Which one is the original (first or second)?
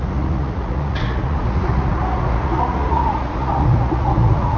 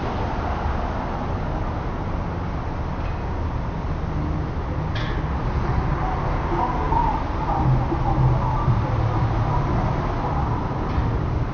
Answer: second